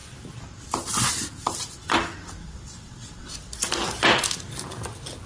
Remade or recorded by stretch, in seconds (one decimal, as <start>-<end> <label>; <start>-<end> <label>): 0.0-2.4 recorded; 2.4-3.3 remade; 3.3-5.3 recorded